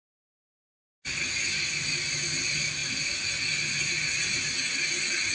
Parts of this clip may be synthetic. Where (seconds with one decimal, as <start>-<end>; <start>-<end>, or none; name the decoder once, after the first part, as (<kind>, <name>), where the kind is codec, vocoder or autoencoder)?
none